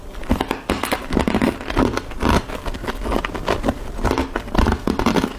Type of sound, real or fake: real